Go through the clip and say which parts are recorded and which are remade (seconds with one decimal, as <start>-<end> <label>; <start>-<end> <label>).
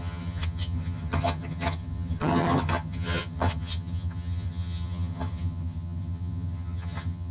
0.0-7.3 remade